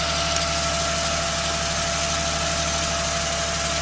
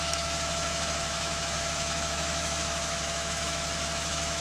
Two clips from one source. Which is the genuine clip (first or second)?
first